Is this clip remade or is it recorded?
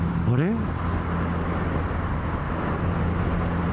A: recorded